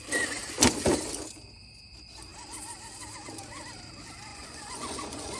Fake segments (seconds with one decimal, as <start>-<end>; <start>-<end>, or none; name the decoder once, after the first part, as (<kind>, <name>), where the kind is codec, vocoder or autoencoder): 4.3-5.4 (vocoder, Vocos)